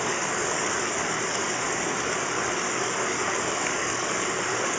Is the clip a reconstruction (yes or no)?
yes